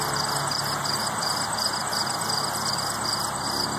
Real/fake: real